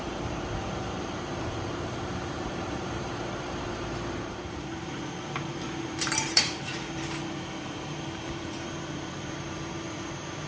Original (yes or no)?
no